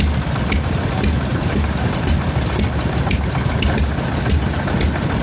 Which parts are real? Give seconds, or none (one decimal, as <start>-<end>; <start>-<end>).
0.0-1.3; 4.4-5.2